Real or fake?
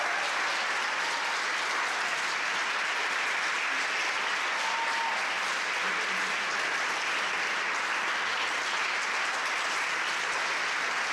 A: real